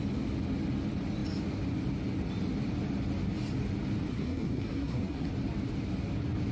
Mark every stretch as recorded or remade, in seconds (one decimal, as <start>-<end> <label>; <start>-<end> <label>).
0.0-4.1 recorded; 4.1-5.3 remade; 5.3-6.5 recorded